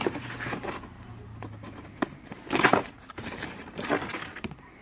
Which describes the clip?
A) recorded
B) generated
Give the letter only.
B